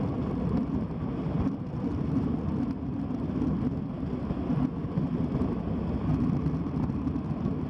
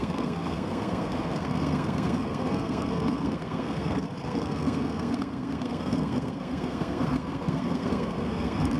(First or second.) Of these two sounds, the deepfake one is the second